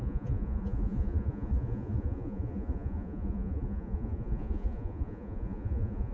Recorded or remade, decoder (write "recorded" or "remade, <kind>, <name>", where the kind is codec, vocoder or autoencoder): remade, vocoder, Vocos